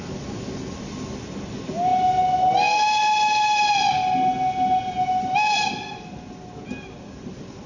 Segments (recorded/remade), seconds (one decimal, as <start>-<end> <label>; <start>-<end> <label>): 0.0-7.7 recorded